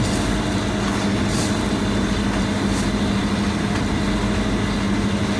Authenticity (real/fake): real